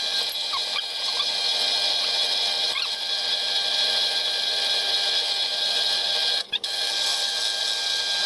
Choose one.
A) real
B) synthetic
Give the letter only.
A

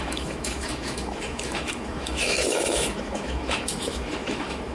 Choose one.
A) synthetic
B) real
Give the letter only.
A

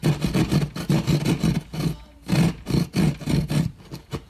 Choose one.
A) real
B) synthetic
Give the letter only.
A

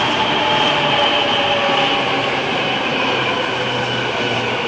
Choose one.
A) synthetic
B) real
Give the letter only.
B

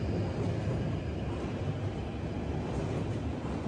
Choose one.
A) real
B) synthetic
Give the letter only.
A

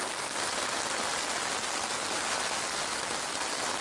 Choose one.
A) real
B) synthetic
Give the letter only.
A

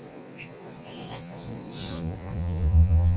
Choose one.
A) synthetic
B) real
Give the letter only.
A